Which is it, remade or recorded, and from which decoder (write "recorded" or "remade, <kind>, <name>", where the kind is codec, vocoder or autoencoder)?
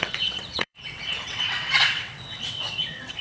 remade, vocoder, WaveNeXt